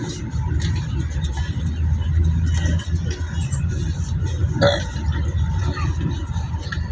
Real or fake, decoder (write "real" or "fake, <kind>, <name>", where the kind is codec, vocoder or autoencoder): real